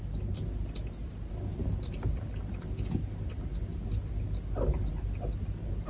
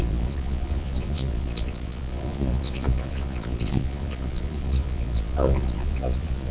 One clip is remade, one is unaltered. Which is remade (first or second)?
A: second